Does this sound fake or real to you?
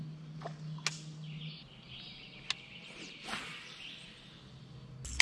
real